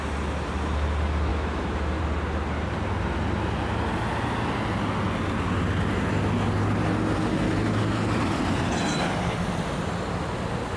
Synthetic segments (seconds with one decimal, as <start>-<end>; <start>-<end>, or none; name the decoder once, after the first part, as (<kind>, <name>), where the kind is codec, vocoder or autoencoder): 1.3-2.0 (autoencoder, DAC-VAE)

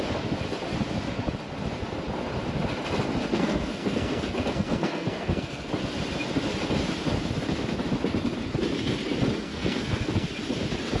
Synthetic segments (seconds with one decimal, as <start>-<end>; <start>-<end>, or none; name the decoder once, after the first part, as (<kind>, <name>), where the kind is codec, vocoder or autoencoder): 3.3-5.7 (codec, SNAC); 9.4-10.3

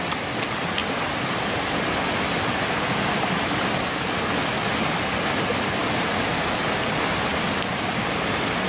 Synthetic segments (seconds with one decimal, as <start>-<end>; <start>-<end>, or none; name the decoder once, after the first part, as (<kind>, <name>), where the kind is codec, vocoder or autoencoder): none

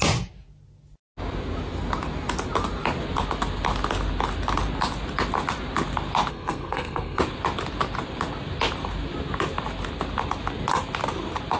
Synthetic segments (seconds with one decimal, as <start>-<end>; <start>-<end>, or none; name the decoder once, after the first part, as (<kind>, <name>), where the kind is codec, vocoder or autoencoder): 6.3-7.2 (codec, SNAC)

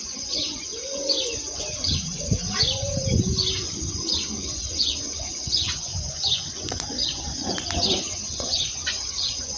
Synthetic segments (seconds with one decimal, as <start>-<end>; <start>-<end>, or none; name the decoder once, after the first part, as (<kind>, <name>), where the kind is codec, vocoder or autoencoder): 0.0-9.6 (vocoder, Vocos)